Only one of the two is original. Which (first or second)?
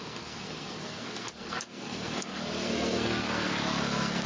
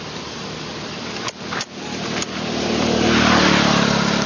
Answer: second